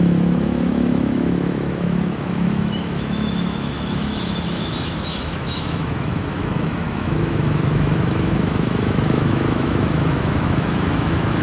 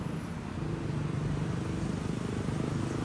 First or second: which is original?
second